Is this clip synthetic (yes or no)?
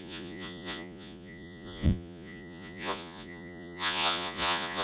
yes